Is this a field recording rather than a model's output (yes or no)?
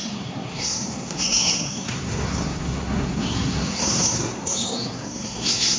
no